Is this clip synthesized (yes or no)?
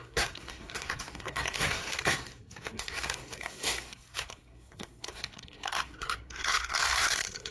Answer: yes